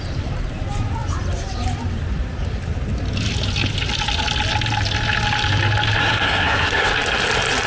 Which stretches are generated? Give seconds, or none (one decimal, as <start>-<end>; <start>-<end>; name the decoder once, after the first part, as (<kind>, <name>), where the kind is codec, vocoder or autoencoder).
6.0-6.9 (codec, SNAC)

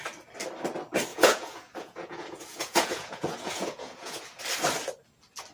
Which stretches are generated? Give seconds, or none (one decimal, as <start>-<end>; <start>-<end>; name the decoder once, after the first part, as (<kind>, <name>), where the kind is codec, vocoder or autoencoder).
1.1-4.4 (vocoder, Vocos)

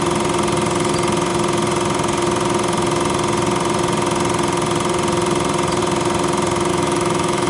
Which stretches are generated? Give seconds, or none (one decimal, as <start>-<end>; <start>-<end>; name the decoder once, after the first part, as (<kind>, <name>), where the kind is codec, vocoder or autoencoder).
6.7-7.5 (autoencoder, DAC-VAE)

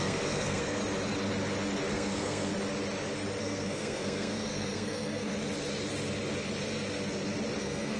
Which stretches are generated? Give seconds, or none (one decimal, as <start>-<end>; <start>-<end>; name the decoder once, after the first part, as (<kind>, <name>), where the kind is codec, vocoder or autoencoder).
0.0-0.8 (codec, SNAC); 1.9-2.5; 3.4-5.3; 7.6-8.0

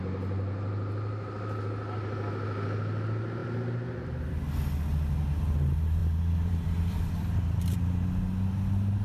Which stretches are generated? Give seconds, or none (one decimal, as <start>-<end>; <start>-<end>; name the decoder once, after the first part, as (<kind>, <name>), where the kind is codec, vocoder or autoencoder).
3.4-4.3 (vocoder, BigVGAN v2); 6.0-7.8

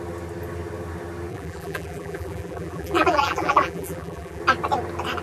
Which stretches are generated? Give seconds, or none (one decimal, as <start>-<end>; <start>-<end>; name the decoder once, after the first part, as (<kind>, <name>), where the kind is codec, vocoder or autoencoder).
1.3-4.4 (vocoder, BigVGAN v2)

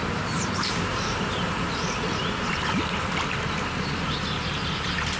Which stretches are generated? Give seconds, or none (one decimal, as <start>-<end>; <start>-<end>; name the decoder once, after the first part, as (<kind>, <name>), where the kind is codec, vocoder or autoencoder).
0.0-2.8 (vocoder, BigVGAN v2)